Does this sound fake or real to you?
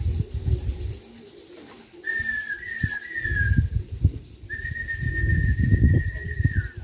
real